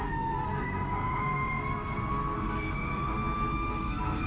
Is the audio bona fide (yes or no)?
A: no